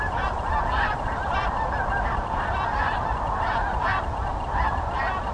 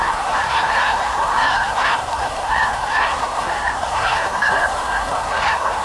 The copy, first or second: second